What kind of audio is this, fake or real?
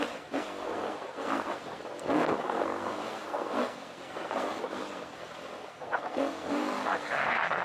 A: fake